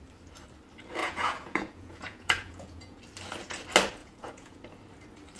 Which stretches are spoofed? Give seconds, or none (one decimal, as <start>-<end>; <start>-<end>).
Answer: 1.0-3.0; 4.0-4.6

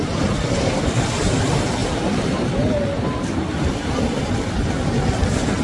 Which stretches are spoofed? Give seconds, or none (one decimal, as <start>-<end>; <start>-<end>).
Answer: none